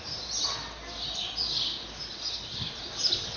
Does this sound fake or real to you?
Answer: real